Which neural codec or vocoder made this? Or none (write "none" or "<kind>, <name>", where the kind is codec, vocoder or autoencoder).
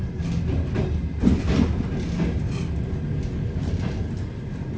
none